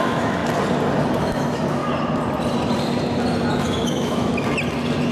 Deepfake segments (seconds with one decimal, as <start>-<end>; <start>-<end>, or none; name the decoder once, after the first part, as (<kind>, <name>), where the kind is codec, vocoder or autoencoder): 0.0-0.4 (autoencoder, DAC-VAE); 1.2-1.8; 3.5-4.3